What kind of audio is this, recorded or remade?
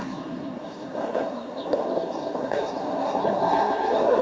remade